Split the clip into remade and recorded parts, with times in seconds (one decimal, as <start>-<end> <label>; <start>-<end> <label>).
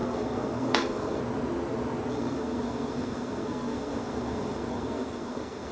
0.0-1.2 remade; 1.2-2.1 recorded; 2.1-5.7 remade